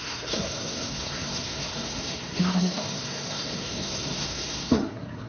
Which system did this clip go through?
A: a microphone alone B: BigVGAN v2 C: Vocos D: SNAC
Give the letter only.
D